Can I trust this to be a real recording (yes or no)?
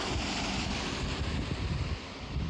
yes